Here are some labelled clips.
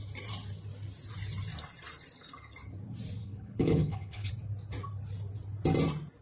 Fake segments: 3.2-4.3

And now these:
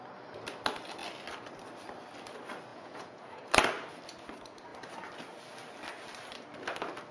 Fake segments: 2.7-3.4

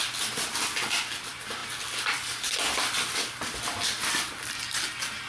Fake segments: none

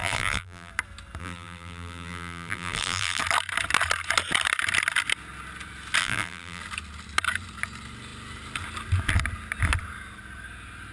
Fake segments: 0.0-0.7; 1.2-3.2; 6.0-6.6

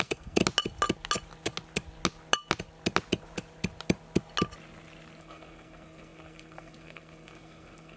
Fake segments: 0.0-0.4; 5.2-8.0